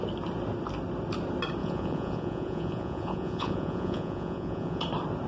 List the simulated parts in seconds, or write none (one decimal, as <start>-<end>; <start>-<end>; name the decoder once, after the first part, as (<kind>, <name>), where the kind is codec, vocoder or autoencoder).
1.6-4.8 (vocoder, Vocos)